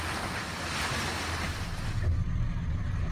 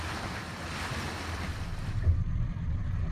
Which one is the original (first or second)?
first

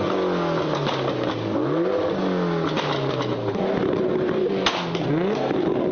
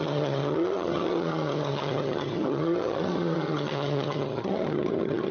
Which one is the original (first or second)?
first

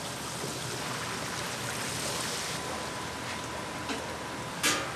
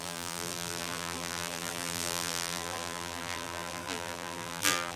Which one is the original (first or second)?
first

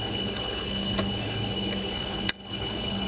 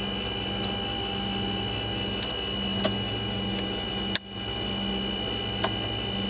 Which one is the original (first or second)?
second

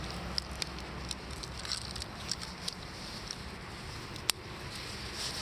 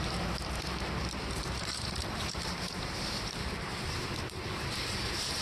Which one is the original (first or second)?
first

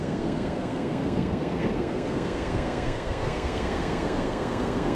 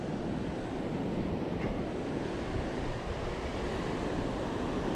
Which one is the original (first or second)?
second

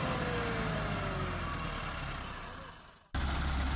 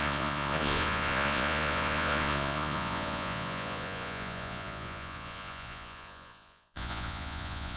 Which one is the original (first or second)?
first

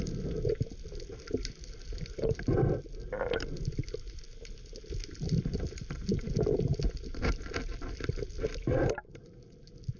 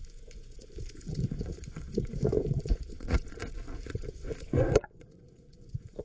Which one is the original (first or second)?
first